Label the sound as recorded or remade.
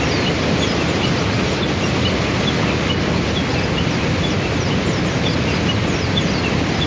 recorded